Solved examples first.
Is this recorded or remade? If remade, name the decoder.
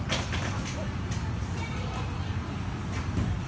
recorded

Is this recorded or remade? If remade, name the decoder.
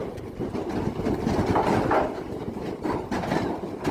recorded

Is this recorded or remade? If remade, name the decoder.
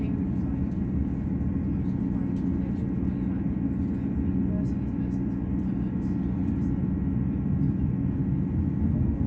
recorded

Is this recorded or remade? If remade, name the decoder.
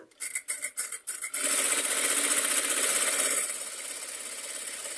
recorded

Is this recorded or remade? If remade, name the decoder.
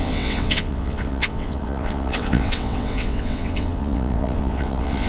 remade, vocoder, WaveNeXt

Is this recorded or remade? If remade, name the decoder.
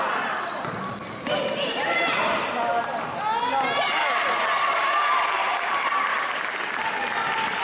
recorded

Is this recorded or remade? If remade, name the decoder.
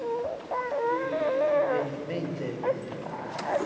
recorded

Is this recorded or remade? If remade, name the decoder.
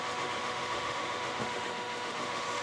remade, autoencoder, DAC-VAE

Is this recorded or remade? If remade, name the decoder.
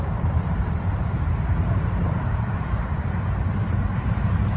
remade, vocoder, BigVGAN v2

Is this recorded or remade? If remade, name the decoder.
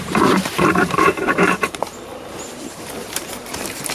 remade, vocoder, BigVGAN v2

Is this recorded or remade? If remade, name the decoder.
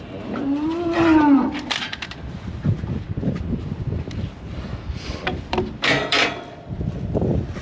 remade, vocoder, BigVGAN v2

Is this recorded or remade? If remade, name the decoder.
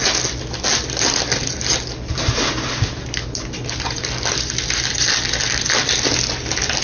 recorded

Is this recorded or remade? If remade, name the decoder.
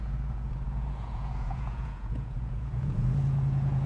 remade, vocoder, Vocos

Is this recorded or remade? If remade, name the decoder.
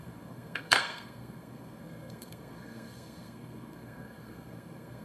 remade, codec, SNAC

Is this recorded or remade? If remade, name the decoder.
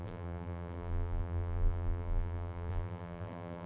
remade, vocoder, BigVGAN v2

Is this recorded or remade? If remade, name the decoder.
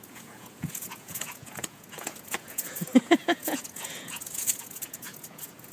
remade, vocoder, Vocos